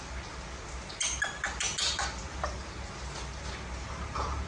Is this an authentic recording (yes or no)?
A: yes